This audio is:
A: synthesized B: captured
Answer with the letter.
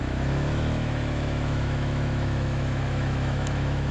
A